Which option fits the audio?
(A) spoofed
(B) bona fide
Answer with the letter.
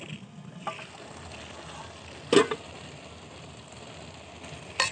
B